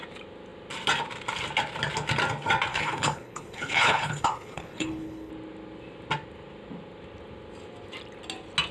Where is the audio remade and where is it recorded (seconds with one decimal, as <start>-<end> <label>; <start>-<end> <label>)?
0.0-2.7 recorded; 2.7-5.3 remade; 5.3-8.7 recorded